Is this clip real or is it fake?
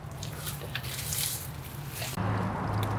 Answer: real